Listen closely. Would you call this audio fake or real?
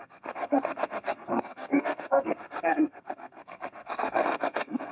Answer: fake